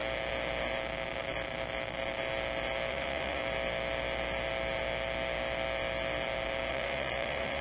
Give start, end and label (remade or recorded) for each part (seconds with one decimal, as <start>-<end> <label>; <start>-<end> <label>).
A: 0.0-2.9 recorded; 2.9-3.4 remade; 3.4-6.7 recorded; 6.7-7.6 remade